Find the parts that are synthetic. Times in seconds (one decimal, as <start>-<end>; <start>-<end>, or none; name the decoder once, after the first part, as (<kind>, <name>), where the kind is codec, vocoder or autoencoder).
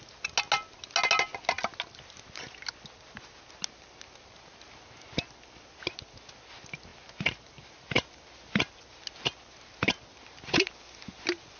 none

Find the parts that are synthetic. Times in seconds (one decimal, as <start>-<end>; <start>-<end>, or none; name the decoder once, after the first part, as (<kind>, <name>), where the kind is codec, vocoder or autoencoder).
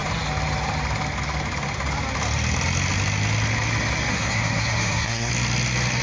4.1-5.3 (codec, SNAC)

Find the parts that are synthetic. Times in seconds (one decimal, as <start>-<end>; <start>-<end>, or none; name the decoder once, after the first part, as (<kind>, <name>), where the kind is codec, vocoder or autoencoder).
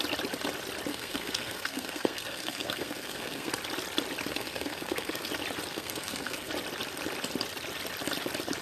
0.9-3.5 (codec, SNAC); 4.3-5.3; 5.7-6.5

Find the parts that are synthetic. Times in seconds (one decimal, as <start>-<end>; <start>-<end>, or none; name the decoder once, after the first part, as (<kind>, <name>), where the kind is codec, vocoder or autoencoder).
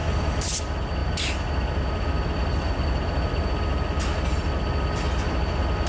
0.0-0.6 (vocoder, BigVGAN v2)